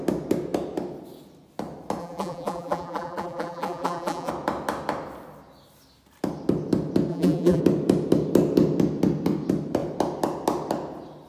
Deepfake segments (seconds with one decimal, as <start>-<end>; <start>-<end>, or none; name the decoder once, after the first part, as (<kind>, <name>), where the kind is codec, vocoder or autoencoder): 2.0-4.3 (vocoder, BigVGAN v2); 7.1-7.6